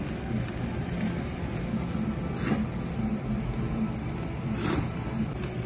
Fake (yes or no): no